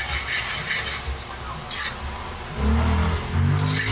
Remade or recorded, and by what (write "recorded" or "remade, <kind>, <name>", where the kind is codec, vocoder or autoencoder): recorded